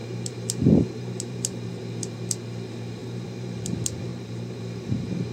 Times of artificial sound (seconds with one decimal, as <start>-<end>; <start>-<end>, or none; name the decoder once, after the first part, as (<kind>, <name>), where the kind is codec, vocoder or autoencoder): 0.0-1.7 (vocoder, BigVGAN v2); 3.0-3.5; 4.1-4.6